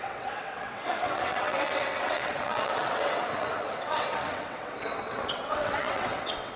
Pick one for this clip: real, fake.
fake